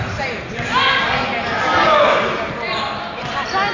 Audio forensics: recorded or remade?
recorded